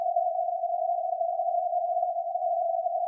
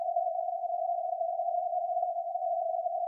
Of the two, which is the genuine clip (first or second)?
first